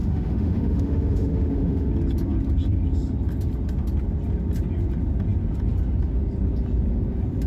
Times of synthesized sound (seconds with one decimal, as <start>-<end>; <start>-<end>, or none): 0.0-1.9